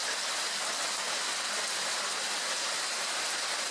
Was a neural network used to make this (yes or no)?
no